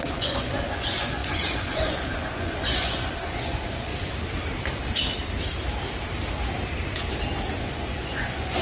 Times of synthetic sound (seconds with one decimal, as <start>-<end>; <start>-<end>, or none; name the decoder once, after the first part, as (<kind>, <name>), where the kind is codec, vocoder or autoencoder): 0.0-3.9 (vocoder, Vocos); 7.5-8.6